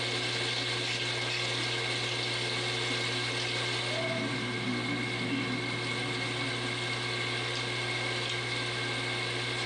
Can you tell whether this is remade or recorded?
recorded